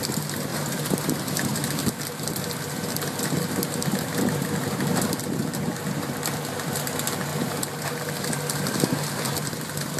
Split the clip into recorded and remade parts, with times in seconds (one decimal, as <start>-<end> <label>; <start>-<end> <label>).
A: 0.0-10.0 recorded